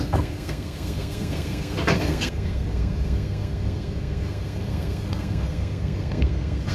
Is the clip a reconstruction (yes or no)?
yes